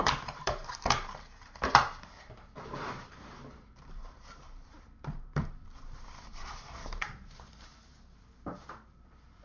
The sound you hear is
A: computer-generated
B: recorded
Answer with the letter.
A